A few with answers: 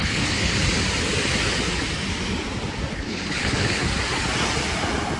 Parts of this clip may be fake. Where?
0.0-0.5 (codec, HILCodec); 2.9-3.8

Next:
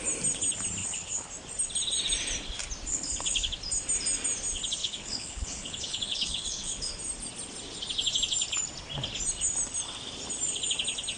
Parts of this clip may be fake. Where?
0.8-1.3 (codec, HILCodec); 2.9-3.5; 4.8-6.9

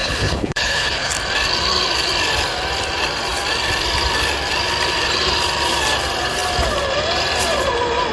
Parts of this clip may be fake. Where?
0.0-1.1 (codec, HILCodec)

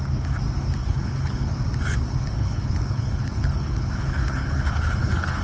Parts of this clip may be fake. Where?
0.8-1.5 (codec, HILCodec); 1.9-5.4

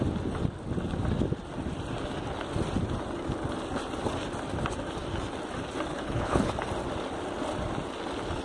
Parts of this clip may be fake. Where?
5.9-6.5 (codec, HILCodec)

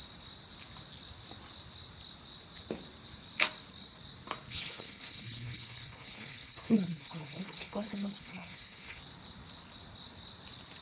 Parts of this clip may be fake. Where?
4.5-9.0 (codec, HILCodec)

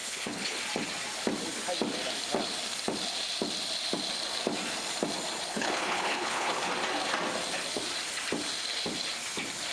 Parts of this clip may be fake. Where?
0.0-0.6 (codec, HILCodec); 5.5-6.7